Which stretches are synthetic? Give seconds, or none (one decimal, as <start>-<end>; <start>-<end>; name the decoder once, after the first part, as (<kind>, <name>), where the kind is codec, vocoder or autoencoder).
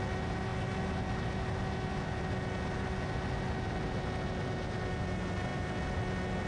none